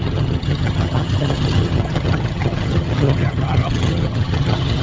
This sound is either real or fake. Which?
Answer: fake